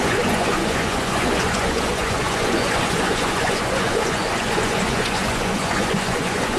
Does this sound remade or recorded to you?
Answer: remade